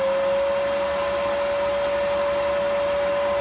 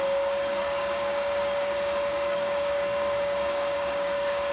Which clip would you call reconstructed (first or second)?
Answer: second